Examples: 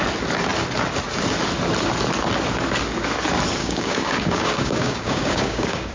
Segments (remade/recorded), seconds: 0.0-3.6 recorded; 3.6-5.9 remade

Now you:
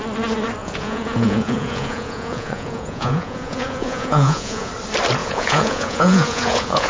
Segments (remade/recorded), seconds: 0.0-0.6 recorded; 0.6-4.7 remade; 4.7-5.2 recorded; 5.2-6.9 remade

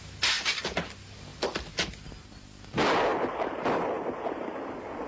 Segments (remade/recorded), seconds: 0.0-5.1 recorded

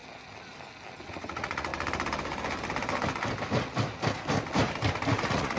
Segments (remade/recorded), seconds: 0.0-1.1 recorded; 1.1-1.7 remade; 1.7-5.1 recorded; 5.1-5.6 remade

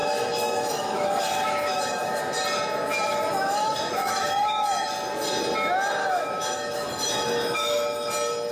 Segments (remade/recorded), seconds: 0.0-2.2 remade; 2.2-2.9 recorded; 2.9-4.9 remade; 4.9-6.0 recorded; 6.0-8.1 remade; 8.1-8.5 recorded

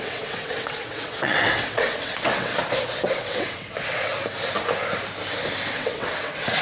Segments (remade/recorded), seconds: 0.0-2.5 remade; 2.5-3.1 recorded; 3.1-4.1 remade; 4.1-5.7 recorded; 5.7-6.6 remade